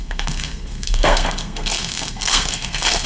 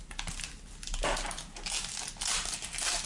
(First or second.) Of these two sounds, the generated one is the first